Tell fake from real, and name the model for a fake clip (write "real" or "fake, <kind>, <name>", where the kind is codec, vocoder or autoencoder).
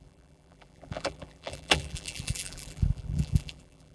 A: fake, vocoder, BigVGAN v2